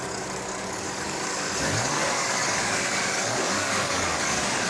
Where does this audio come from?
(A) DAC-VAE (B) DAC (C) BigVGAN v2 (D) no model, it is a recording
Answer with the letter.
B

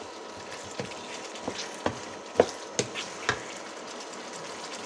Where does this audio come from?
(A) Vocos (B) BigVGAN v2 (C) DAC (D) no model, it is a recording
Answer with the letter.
D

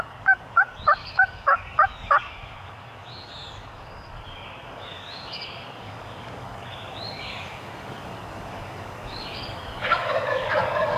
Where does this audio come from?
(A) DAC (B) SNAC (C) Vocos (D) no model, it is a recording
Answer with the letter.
A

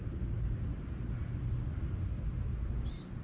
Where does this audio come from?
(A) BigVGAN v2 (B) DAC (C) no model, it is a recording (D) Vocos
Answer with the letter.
C